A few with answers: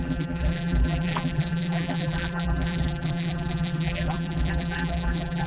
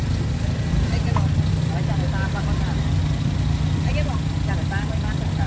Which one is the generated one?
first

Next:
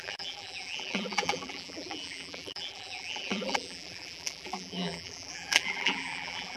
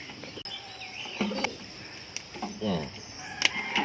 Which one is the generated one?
first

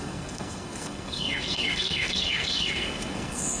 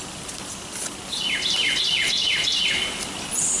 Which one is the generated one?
first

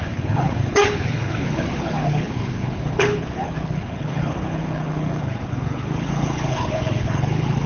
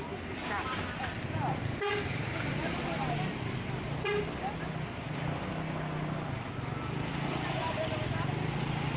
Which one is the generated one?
first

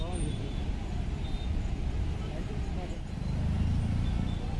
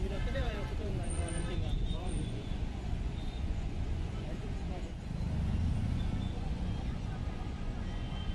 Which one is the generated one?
second